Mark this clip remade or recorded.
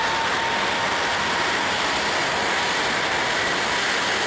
recorded